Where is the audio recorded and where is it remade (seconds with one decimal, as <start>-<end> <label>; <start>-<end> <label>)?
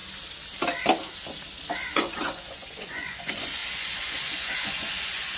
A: 0.0-1.7 recorded; 1.7-5.4 remade